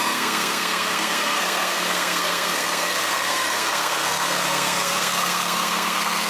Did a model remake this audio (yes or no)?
yes